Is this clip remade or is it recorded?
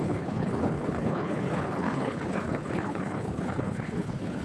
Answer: remade